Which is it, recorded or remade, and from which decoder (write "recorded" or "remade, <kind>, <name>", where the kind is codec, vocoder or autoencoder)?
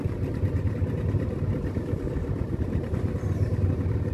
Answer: remade, vocoder, BigVGAN v2